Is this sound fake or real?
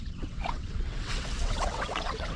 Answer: fake